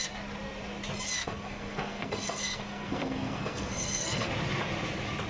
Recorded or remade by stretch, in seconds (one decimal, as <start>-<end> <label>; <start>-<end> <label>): 0.0-1.2 recorded; 1.2-4.3 remade; 4.3-5.3 recorded